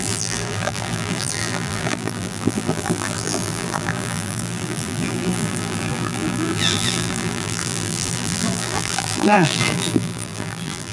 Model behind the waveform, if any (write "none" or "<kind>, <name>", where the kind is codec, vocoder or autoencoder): vocoder, BigVGAN v2